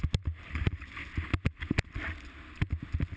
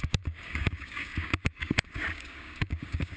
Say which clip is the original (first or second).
first